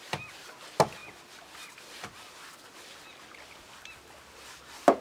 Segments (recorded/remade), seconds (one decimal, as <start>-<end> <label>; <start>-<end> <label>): 0.0-1.0 recorded; 1.0-3.2 remade; 3.2-5.0 recorded